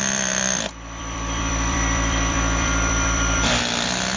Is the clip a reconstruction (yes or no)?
yes